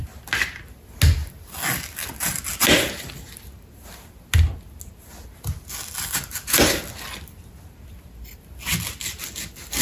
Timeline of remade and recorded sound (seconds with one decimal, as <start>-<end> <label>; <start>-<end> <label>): 0.0-9.8 recorded